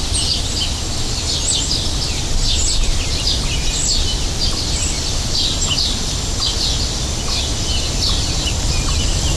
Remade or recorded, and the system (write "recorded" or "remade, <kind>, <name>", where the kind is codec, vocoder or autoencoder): recorded